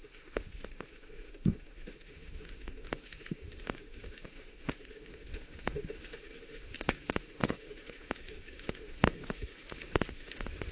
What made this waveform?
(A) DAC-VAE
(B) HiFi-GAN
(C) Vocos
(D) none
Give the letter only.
A